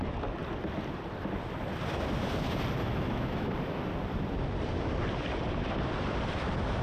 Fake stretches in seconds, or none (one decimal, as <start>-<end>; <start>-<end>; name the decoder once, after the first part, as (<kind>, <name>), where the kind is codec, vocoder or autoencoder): 2.8-3.5 (autoencoder, DAC-VAE)